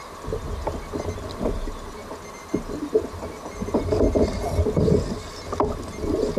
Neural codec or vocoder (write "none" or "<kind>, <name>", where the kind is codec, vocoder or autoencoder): none